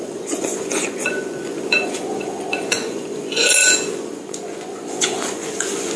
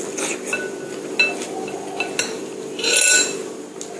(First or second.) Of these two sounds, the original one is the second